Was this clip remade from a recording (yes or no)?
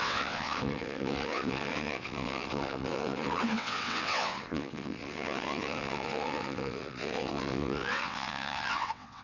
yes